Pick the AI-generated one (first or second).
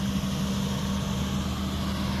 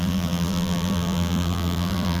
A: second